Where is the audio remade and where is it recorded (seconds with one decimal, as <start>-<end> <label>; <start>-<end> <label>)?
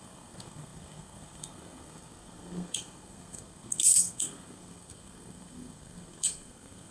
0.0-6.9 remade